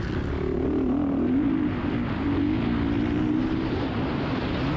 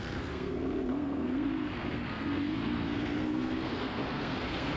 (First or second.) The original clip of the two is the first